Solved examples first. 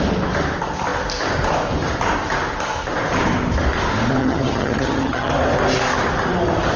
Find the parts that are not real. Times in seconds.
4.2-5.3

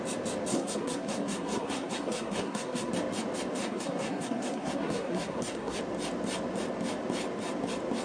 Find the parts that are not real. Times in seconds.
0.5-2.9; 3.6-5.8

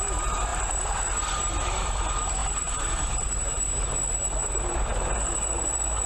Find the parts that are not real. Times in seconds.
2.4-3.8; 4.4-5.0

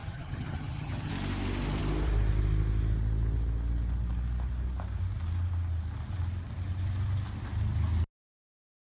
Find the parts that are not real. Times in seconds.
0.0-1.1

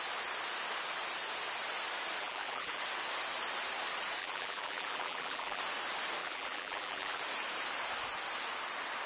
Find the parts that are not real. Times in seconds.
2.2-2.8; 4.2-5.6; 6.2-7.2

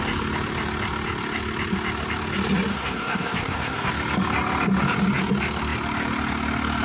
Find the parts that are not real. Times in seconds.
2.7-3.9